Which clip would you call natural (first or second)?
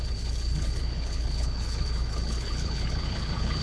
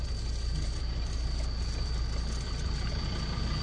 second